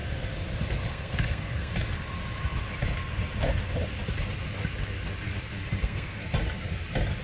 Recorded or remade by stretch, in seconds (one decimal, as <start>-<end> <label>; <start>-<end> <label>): 0.0-0.9 recorded; 0.9-1.7 remade; 1.7-5.8 recorded; 5.8-6.2 remade; 6.2-7.2 recorded